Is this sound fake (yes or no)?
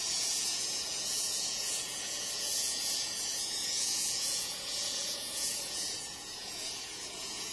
yes